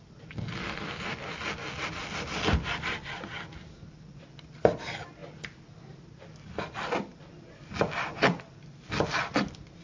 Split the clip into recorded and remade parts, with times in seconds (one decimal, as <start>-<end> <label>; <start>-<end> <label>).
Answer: 0.0-9.8 recorded